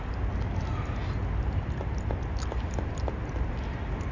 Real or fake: real